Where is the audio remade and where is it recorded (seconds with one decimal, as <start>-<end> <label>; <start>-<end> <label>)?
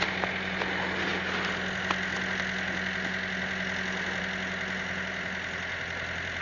0.0-6.4 recorded